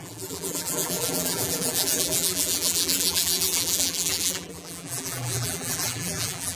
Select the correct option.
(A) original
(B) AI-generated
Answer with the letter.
B